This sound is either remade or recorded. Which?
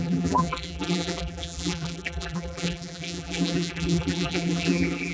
remade